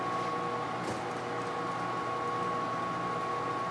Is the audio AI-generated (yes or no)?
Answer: no